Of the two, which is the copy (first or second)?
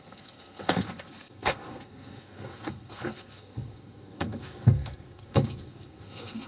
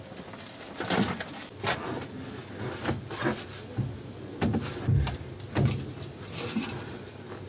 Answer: first